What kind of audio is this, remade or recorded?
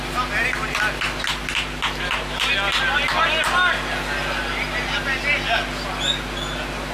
recorded